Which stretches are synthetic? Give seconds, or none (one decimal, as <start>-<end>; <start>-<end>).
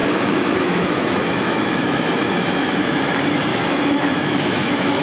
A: 0.0-3.0; 3.5-5.0